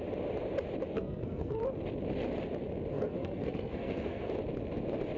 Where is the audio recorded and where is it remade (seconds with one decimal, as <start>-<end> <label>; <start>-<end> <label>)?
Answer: 0.0-0.9 recorded; 0.9-1.6 remade; 1.6-2.9 recorded; 2.9-4.3 remade; 4.3-5.2 recorded